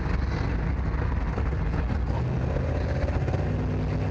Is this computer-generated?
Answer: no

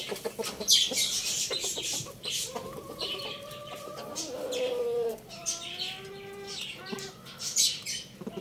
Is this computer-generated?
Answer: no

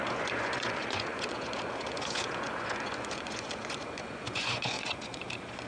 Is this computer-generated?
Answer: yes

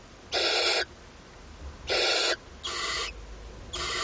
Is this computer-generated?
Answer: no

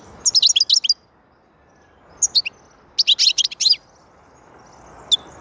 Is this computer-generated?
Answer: no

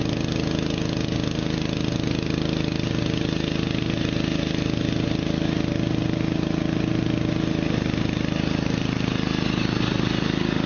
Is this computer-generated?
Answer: no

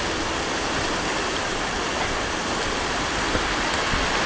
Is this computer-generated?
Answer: no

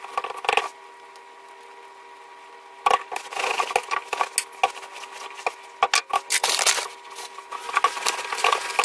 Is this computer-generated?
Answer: no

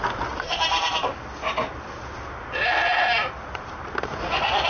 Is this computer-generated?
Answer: no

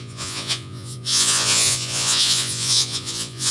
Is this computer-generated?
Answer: yes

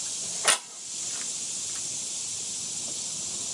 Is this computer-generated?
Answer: no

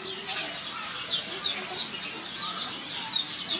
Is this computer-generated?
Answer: no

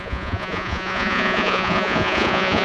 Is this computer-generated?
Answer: yes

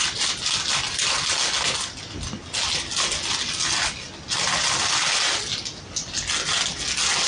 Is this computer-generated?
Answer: no